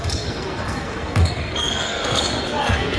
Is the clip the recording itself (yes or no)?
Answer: no